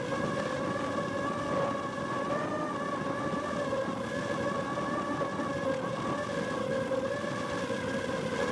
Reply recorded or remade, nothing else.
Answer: recorded